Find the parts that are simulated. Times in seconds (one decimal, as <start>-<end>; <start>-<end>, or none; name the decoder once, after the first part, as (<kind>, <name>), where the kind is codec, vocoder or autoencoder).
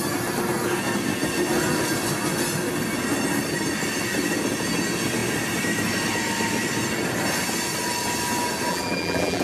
8.7-9.4 (vocoder, BigVGAN v2)